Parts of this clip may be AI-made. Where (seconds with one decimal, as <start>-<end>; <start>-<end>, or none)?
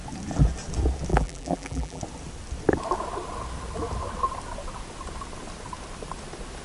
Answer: 1.1-2.0